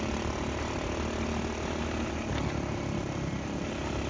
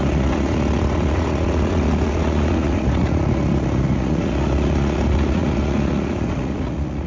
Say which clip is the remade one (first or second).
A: second